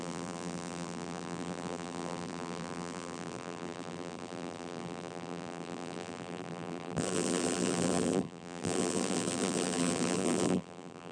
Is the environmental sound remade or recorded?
remade